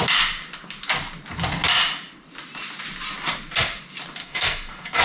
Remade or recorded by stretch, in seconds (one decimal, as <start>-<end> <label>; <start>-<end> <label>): 0.0-4.2 recorded; 4.2-5.0 remade